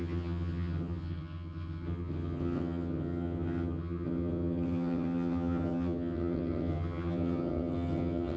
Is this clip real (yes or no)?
no